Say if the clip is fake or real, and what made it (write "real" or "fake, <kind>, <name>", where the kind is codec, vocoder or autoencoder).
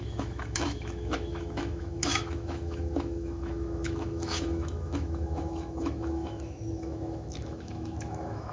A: fake, autoencoder, DAC-VAE